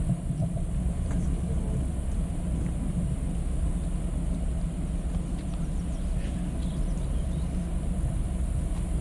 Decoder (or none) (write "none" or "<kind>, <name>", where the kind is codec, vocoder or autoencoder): none